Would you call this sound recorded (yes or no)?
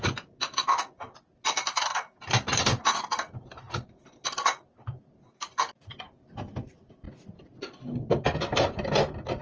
yes